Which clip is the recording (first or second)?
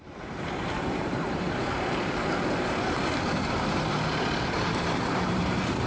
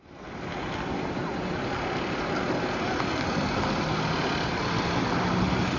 second